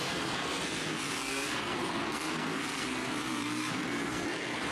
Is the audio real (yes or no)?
no